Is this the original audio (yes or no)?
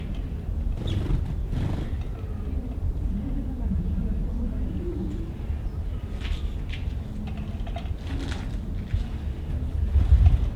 yes